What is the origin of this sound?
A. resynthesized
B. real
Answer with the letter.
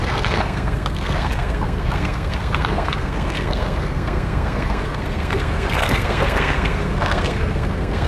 A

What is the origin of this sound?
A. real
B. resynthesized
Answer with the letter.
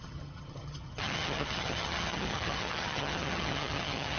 B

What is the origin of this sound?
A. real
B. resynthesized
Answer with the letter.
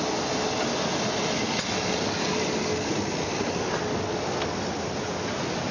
A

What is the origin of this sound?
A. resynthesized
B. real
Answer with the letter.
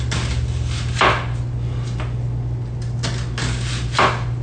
B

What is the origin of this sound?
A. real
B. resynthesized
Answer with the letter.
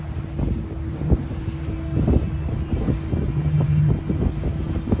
A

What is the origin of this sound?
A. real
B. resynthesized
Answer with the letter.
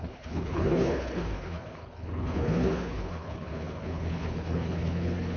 B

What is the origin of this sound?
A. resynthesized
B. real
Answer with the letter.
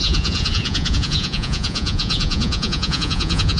A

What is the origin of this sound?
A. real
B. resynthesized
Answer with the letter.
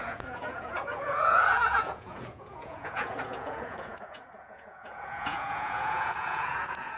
B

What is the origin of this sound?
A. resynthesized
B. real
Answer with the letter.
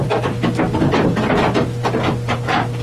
B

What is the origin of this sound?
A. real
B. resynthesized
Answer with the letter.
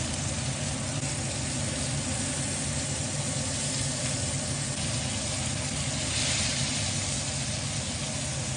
A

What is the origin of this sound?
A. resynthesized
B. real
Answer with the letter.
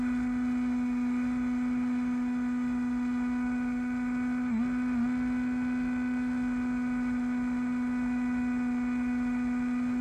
B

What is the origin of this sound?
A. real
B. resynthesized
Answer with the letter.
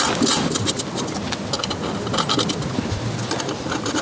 A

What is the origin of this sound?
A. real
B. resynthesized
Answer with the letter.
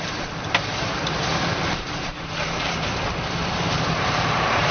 B